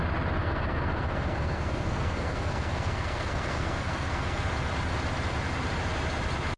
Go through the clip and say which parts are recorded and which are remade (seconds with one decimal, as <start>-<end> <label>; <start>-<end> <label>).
0.0-0.4 recorded; 0.4-4.4 remade; 4.4-6.6 recorded